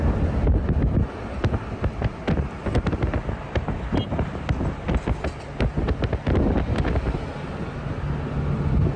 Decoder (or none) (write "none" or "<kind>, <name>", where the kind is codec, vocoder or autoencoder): none